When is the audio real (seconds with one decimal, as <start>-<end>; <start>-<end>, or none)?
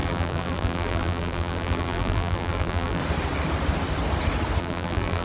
3.0-4.6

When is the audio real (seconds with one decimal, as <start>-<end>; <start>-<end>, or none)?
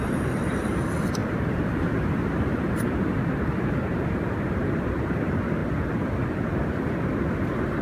0.0-1.2; 4.5-7.8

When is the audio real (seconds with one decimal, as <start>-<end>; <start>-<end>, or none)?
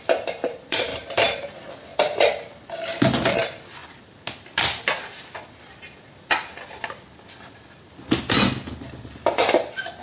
0.0-0.9; 1.5-10.0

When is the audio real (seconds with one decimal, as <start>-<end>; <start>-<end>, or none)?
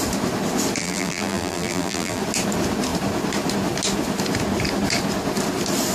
0.0-0.8; 2.2-5.9